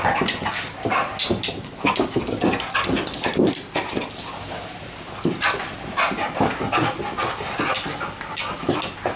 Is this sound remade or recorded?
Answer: recorded